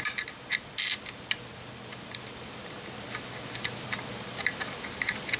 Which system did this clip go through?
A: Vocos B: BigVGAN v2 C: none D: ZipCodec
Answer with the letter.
C